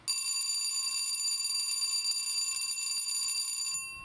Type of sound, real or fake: real